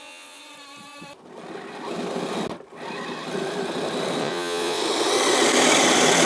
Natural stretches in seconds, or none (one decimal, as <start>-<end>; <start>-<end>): 0.4-4.2; 4.8-6.3

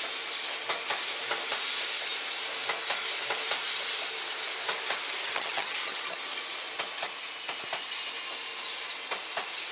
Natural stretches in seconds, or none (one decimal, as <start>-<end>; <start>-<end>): 0.0-5.2; 6.2-9.7

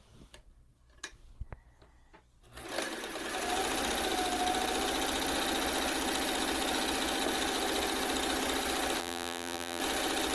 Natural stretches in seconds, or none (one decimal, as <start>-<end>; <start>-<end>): 0.0-9.0; 9.8-10.3